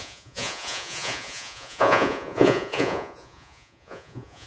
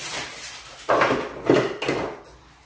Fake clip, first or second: first